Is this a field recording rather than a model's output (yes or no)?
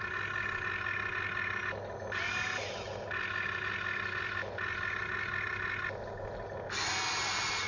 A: yes